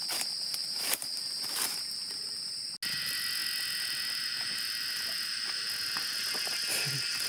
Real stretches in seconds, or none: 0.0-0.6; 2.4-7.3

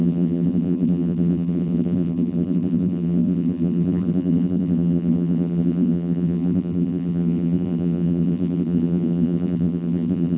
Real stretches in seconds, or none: none

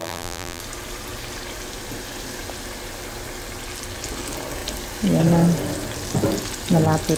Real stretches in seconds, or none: 0.6-7.2

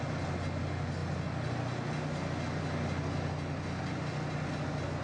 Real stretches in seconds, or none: 0.0-5.0

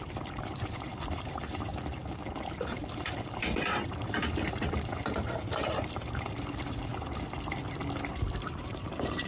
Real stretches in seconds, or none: 1.7-2.4; 6.9-8.1